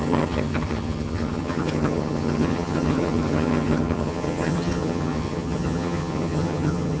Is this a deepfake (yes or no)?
yes